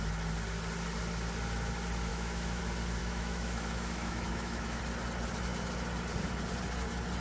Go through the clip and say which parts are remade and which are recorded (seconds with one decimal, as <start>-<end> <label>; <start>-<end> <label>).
0.0-2.1 recorded; 2.1-2.6 remade; 2.6-3.0 recorded; 3.0-4.8 remade; 4.8-7.2 recorded